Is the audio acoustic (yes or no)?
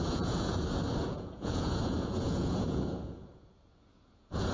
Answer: no